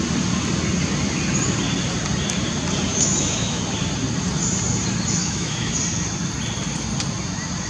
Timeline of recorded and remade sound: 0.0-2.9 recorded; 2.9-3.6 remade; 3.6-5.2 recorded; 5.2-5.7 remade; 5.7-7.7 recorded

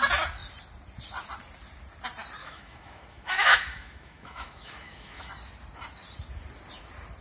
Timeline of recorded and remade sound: 0.0-2.4 recorded; 2.4-5.3 remade; 5.3-7.2 recorded

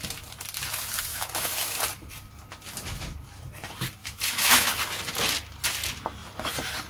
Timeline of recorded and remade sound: 0.0-1.1 recorded; 1.1-1.8 remade; 1.8-4.0 recorded; 4.0-4.7 remade; 4.7-6.9 recorded

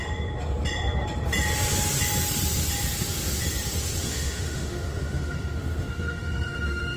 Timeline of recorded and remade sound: 0.0-4.0 recorded; 4.0-7.0 remade